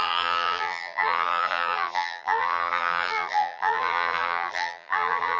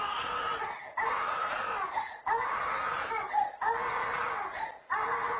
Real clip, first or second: second